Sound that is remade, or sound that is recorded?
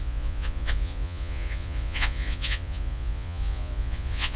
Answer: remade